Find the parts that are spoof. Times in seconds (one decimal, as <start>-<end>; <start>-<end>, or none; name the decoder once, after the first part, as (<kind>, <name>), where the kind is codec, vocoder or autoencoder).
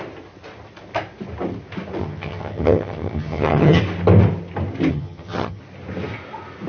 2.0-3.8 (vocoder, HiFi-GAN); 4.9-5.6